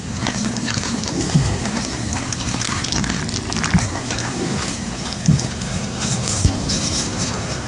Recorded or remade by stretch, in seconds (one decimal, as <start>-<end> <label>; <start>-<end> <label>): 0.0-3.2 remade; 3.2-3.8 recorded; 3.8-7.7 remade